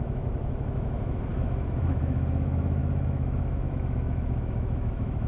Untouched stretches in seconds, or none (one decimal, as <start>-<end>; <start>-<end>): none